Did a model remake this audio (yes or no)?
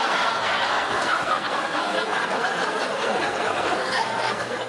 yes